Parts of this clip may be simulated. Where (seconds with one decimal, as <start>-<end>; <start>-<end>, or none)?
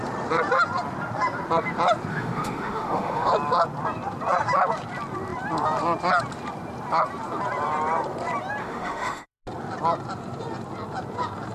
2.1-3.3; 8.6-9.4